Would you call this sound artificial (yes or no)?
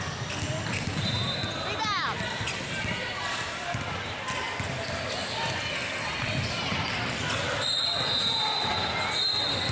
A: no